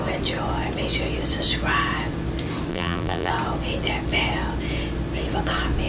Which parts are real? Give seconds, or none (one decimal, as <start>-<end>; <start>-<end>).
0.0-2.7; 3.3-5.9